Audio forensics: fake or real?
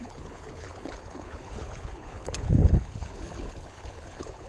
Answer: fake